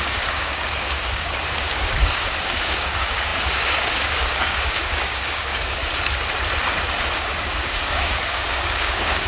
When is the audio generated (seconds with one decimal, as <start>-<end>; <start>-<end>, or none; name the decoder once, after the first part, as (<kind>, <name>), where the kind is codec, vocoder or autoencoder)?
0.0-5.8 (codec, DAC); 7.1-9.3